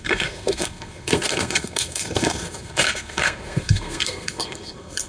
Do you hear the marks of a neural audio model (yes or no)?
yes